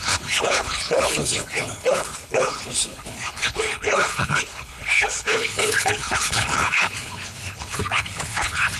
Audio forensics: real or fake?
fake